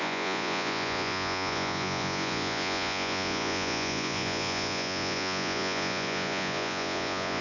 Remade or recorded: remade